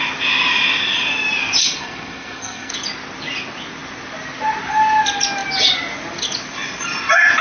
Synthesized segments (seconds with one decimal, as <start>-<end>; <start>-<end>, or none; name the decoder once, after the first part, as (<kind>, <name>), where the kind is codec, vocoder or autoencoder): 1.6-2.7 (codec, SNAC)